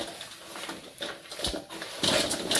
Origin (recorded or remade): recorded